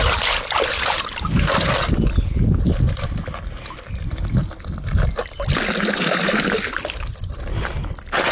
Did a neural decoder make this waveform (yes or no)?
no